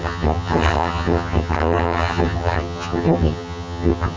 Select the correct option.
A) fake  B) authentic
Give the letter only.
A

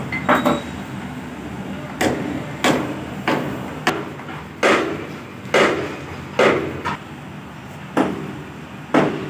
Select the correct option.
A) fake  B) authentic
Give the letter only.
B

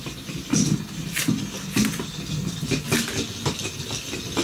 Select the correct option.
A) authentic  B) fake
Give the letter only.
A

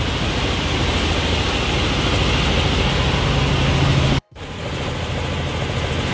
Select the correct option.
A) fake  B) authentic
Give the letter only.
B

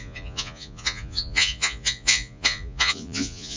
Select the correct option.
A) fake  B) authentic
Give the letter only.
A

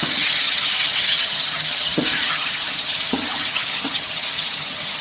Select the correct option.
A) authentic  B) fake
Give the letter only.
B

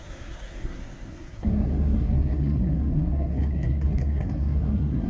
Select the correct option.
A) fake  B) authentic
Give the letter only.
A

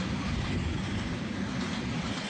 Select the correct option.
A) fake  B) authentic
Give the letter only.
B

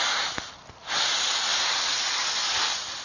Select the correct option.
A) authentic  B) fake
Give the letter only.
A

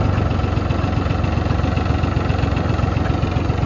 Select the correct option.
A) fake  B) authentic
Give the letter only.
B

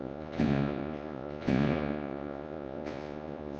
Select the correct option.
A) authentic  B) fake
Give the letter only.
B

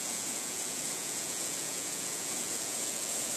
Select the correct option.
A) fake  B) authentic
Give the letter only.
A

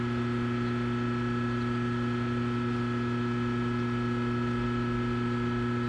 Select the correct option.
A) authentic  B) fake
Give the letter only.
A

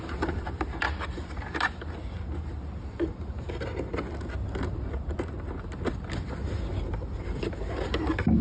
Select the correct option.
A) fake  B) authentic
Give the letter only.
B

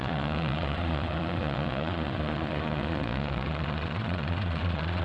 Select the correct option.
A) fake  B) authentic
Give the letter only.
A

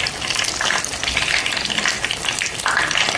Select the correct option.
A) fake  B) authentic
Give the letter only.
B